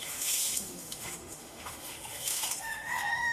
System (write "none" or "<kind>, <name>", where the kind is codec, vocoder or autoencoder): autoencoder, DAC-VAE